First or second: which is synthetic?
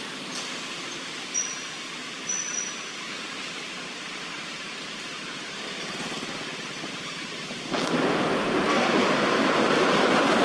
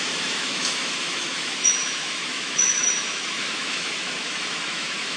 second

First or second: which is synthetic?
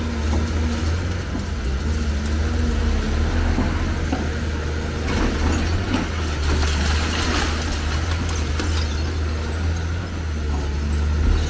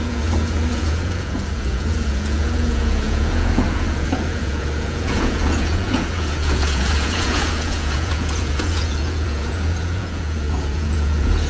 second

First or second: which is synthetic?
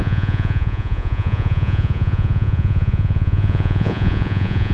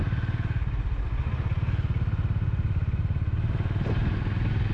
first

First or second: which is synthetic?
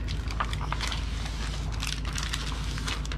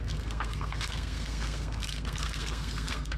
second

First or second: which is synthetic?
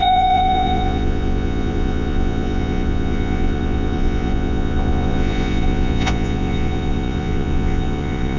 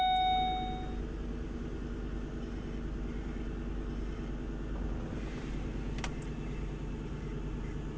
first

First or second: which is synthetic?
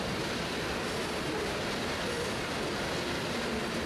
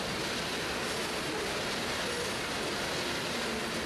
first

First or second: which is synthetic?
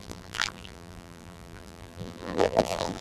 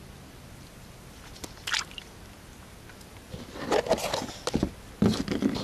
first